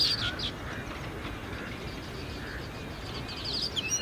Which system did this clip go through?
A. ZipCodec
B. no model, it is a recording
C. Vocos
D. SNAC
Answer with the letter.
B